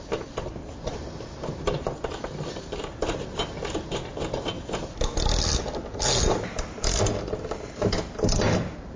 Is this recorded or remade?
recorded